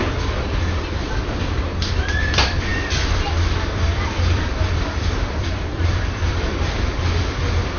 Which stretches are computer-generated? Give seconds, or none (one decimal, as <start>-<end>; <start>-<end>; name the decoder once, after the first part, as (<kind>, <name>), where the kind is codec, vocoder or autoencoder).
2.7-6.5 (vocoder, BigVGAN v2)